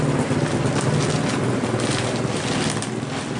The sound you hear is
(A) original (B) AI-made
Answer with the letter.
A